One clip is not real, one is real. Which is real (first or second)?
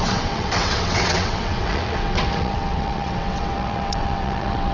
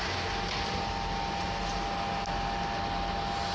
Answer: second